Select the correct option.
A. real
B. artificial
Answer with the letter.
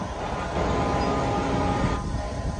A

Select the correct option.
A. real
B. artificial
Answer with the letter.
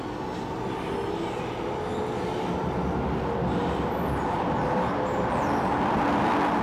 A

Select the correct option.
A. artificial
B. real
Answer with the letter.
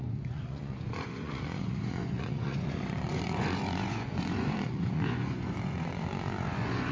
A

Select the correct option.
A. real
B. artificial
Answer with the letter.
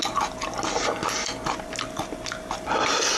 A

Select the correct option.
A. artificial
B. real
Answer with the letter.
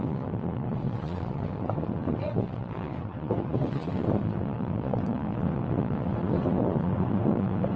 A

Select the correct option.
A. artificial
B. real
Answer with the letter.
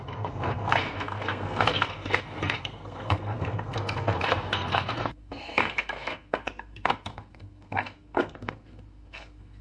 A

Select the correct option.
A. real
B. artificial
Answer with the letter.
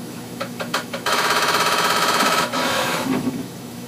B